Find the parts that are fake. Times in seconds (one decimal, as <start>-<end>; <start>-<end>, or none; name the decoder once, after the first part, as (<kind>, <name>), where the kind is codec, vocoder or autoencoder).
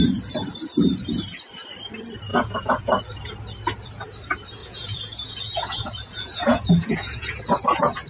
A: 2.3-3.0 (vocoder, Vocos); 4.6-7.4